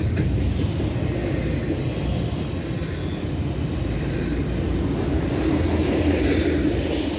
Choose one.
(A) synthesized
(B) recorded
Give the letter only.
B